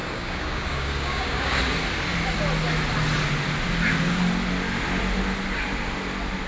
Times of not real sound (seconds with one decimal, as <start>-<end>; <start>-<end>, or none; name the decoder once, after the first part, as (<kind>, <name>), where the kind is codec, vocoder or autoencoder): 0.0-1.6 (codec, DAC)